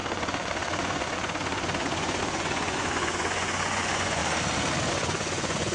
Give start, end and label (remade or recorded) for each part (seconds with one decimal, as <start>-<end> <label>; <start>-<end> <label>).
0.0-4.2 remade; 4.2-4.9 recorded; 4.9-5.7 remade